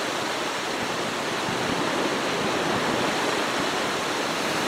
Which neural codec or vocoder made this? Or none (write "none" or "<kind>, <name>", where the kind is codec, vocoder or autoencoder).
none